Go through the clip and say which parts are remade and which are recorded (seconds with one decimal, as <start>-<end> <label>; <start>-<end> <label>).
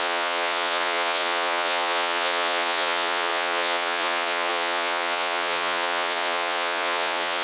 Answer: 0.0-7.4 remade